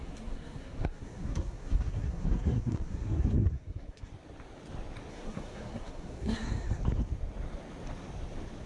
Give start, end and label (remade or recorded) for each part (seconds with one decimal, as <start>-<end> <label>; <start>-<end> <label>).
0.0-4.1 remade; 4.1-5.1 recorded; 5.1-6.5 remade; 6.5-8.7 recorded